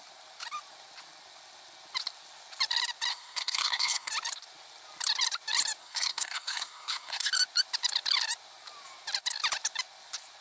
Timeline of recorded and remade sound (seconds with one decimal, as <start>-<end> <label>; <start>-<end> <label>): 0.0-3.1 recorded; 3.1-4.1 remade; 4.1-5.8 recorded; 5.8-7.3 remade; 7.3-10.4 recorded